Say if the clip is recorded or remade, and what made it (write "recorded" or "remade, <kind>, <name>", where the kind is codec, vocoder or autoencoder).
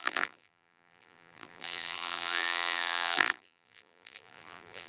remade, vocoder, BigVGAN v2